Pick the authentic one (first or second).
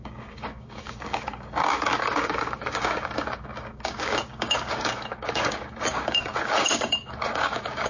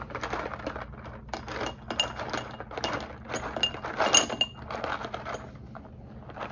second